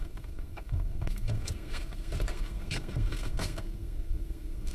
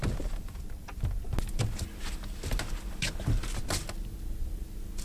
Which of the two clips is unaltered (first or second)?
second